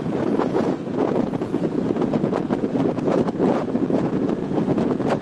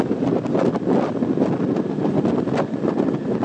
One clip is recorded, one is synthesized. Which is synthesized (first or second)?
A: first